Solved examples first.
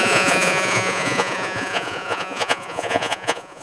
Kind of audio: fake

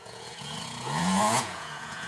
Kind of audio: fake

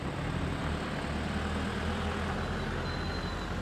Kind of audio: real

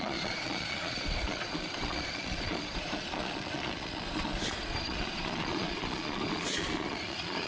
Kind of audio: fake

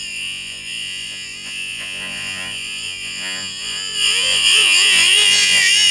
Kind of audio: fake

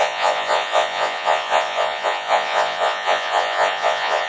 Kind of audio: fake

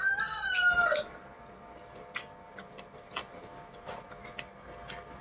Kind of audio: real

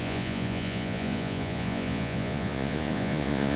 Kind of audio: fake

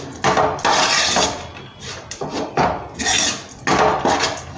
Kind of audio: real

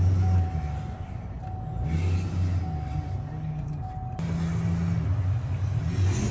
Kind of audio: real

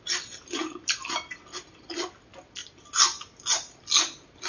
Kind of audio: real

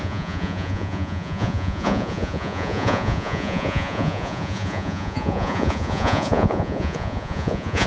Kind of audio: fake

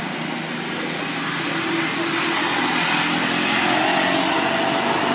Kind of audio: real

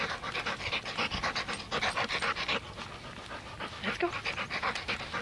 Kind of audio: real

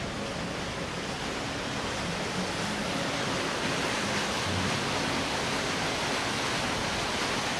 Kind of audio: real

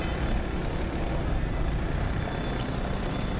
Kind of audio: real